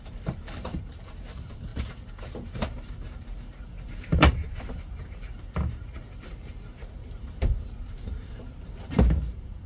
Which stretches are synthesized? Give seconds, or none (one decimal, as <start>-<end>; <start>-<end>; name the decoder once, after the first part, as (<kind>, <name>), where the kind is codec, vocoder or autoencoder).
0.0-9.7 (vocoder, BigVGAN v2)